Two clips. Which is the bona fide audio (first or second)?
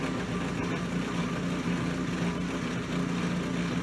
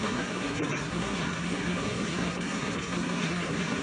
first